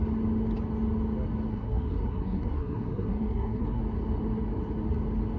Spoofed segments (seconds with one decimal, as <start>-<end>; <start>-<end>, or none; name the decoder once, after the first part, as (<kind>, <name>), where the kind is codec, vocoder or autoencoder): 1.5-3.8 (codec, SNAC)